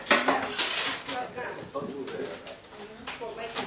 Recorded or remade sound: recorded